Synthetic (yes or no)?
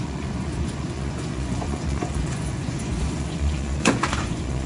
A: yes